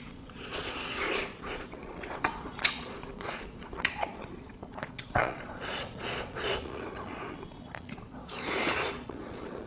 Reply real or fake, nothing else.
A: fake